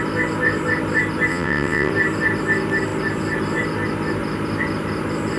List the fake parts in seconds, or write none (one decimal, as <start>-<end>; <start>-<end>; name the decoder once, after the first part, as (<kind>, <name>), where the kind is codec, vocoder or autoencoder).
1.3-1.9 (vocoder, WaveNeXt)